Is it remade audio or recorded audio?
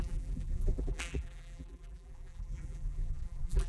remade